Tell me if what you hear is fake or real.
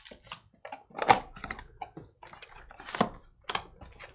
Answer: real